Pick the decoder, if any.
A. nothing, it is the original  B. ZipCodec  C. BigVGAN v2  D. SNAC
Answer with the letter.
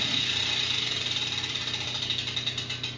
A